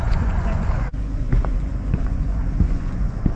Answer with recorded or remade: remade